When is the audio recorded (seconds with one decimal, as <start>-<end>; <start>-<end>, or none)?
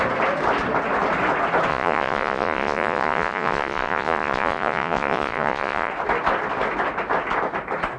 0.0-1.7; 5.9-8.0